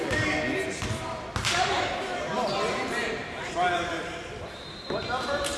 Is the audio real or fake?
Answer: real